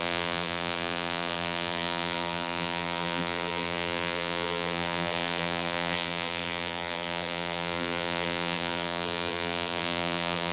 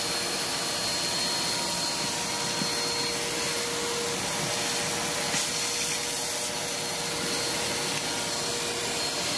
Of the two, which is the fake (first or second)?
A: first